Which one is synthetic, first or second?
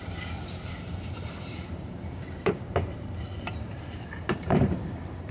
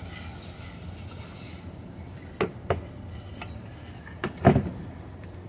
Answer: first